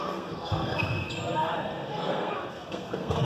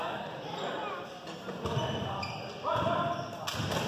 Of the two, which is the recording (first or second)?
second